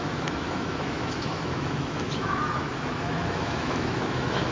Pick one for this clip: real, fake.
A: fake